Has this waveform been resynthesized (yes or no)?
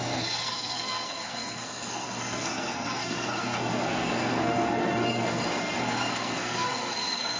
yes